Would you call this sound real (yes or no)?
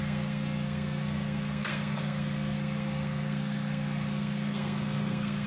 no